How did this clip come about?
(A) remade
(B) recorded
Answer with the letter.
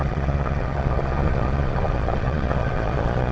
A